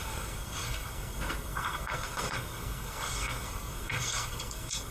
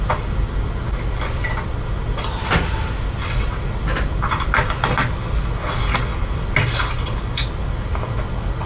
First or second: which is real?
second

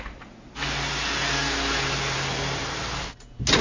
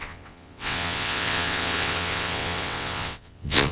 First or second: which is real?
first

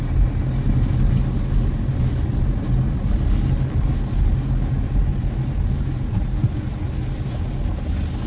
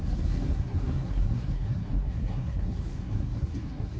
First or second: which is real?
first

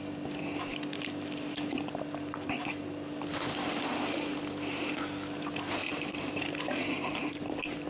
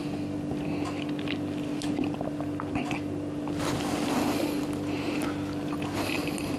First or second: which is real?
second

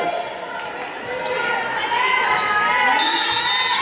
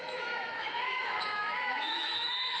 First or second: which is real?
first